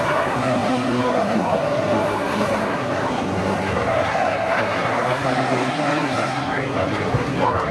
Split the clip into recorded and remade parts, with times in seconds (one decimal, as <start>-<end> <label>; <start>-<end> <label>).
0.0-7.7 remade